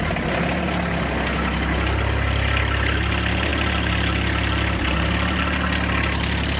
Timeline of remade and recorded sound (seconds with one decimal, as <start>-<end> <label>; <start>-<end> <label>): 0.0-6.6 recorded